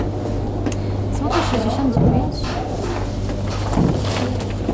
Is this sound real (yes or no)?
yes